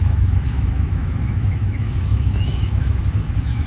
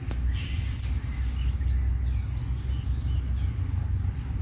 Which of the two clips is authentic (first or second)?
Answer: second